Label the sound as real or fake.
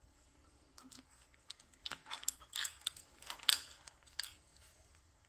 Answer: fake